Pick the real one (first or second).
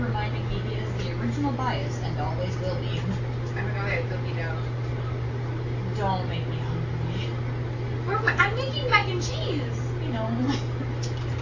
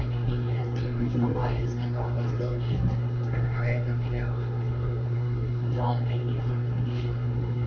first